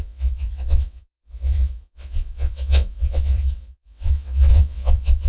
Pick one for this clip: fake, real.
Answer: fake